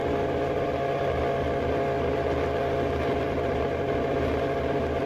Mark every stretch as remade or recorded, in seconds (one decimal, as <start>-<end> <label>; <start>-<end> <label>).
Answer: 0.0-5.1 recorded